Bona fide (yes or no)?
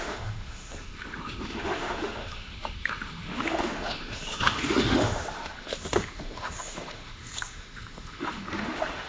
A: no